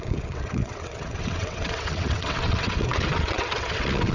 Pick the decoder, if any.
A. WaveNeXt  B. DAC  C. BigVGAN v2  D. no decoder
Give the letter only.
A